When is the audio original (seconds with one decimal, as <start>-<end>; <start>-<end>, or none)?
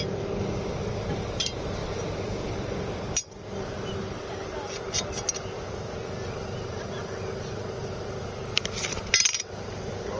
0.0-10.2